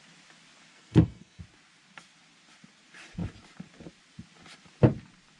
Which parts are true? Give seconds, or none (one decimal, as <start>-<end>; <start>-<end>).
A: 0.0-0.7; 1.4-5.4